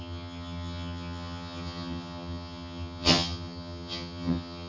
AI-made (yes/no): yes